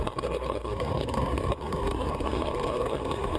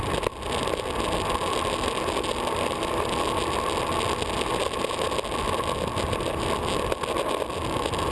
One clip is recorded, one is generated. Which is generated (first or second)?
first